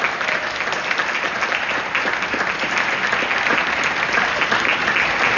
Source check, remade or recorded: recorded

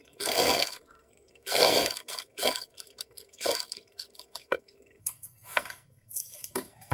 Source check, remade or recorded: remade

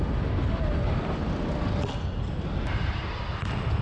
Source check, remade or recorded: recorded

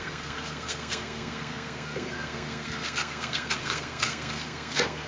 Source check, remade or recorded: remade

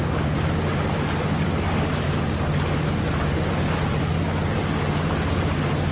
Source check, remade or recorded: recorded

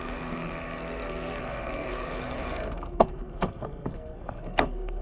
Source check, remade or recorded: remade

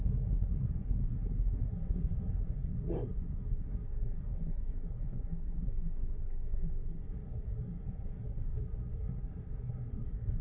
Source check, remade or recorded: remade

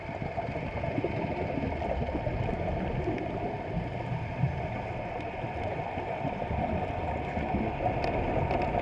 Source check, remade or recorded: recorded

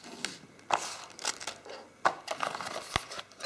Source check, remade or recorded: recorded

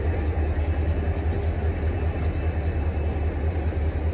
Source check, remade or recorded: recorded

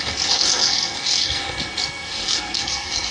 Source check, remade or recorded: remade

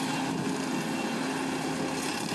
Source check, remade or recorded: recorded